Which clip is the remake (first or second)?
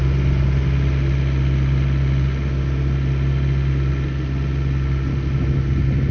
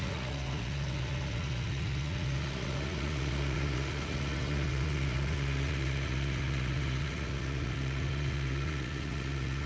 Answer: second